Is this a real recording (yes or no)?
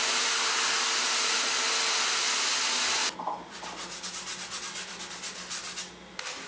yes